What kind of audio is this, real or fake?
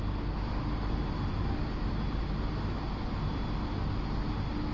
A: real